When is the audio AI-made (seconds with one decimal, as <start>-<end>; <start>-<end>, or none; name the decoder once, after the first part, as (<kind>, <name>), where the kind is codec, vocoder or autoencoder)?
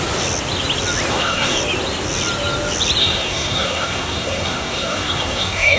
1.1-1.6 (codec, SNAC); 3.0-5.8